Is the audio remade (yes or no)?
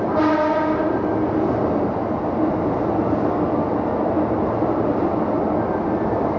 no